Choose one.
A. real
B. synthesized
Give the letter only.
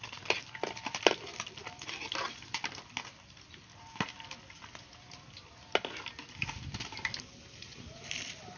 A